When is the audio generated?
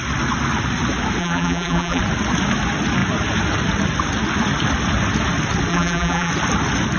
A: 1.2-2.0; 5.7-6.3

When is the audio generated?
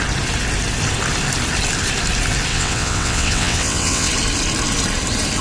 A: 2.5-4.1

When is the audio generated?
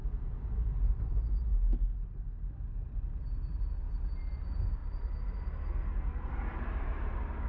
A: 0.0-0.9; 4.8-5.4; 6.5-7.1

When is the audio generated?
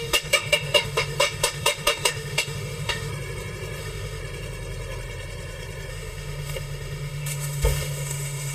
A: 0.0-3.1; 3.8-4.2; 5.9-8.5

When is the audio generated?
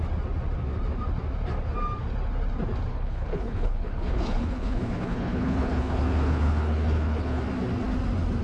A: 2.9-7.4